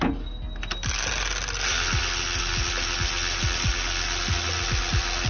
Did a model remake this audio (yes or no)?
no